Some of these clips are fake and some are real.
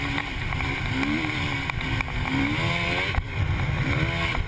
real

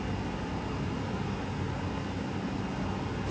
real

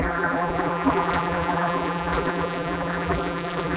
fake